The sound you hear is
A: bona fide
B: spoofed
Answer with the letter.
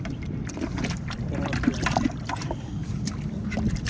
A